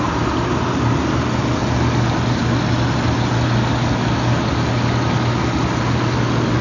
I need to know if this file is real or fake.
real